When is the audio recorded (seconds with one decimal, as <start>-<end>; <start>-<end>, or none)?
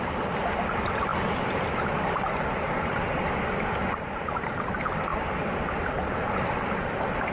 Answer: 0.0-7.3